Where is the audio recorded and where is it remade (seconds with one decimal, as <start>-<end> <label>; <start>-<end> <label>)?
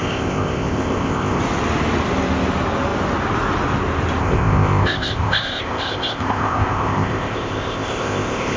0.0-1.4 remade; 1.4-4.2 recorded; 4.2-8.6 remade